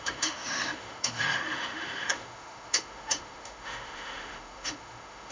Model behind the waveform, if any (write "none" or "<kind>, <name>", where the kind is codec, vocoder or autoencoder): autoencoder, DAC-VAE